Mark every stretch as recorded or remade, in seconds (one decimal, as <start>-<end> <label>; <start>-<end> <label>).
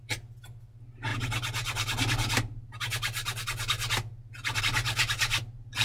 0.0-5.8 recorded